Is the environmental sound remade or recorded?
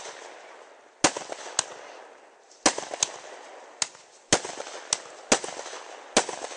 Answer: recorded